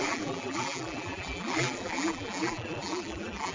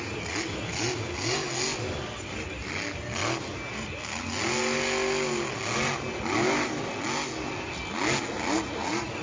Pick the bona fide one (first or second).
second